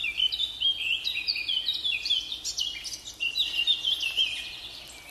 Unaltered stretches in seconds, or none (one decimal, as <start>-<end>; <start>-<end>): 0.6-3.4; 4.1-5.1